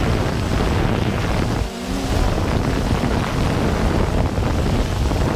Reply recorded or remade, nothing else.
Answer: remade